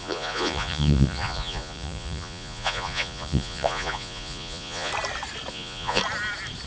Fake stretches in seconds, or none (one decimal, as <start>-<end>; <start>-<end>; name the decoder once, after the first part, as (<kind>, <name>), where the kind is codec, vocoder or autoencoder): 0.0-4.9 (vocoder, Vocos); 5.5-6.0